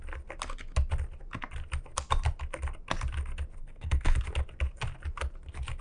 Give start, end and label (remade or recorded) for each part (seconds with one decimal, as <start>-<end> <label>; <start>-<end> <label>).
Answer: 0.0-3.6 recorded; 3.6-4.2 remade; 4.2-5.8 recorded